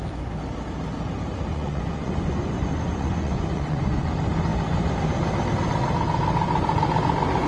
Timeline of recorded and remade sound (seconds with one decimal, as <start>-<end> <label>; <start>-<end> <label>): 0.0-1.5 recorded; 1.5-4.1 remade; 4.1-7.5 recorded